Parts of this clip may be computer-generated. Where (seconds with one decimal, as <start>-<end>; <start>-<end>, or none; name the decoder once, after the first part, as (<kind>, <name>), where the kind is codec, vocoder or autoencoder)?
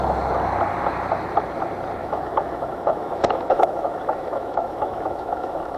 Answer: 2.0-5.8 (autoencoder, DAC-VAE)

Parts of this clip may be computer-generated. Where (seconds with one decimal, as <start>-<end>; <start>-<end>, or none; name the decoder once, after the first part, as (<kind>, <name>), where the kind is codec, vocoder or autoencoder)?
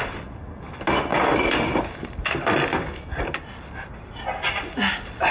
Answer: none